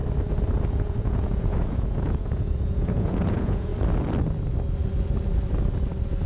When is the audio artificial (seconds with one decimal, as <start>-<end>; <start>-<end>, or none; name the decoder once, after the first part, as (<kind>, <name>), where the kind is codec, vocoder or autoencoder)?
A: 0.7-3.7 (vocoder, Vocos)